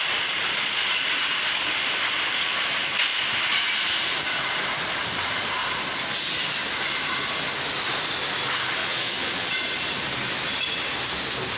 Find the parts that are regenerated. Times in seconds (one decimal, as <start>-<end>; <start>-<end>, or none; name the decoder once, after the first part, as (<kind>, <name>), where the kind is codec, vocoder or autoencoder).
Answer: 8.8-9.5 (vocoder, Vocos)